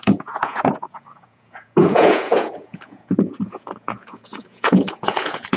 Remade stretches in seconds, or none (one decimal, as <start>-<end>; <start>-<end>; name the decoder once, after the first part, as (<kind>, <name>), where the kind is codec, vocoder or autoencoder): 0.0-5.6 (vocoder, Vocos)